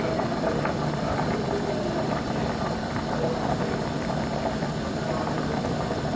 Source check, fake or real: fake